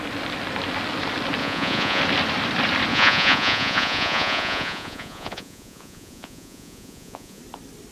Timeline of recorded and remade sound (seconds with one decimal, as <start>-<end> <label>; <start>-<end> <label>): 0.0-1.4 recorded; 1.4-2.0 remade; 2.0-2.9 recorded; 2.9-7.4 remade; 7.4-7.9 recorded